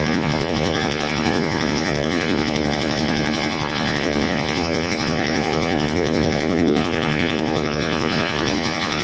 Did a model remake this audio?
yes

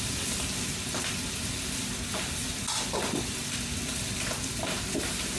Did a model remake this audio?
no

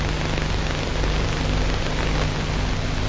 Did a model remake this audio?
no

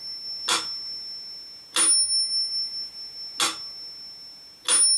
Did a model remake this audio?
no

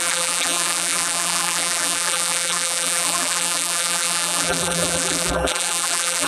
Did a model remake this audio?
yes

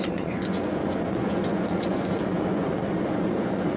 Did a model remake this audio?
yes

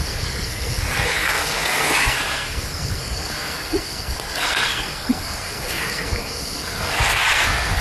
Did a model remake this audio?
yes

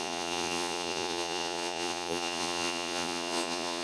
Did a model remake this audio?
yes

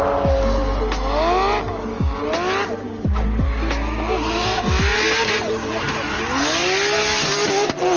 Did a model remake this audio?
no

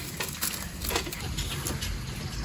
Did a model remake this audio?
no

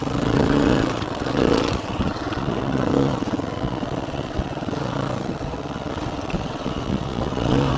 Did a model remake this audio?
yes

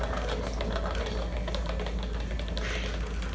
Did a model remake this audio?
no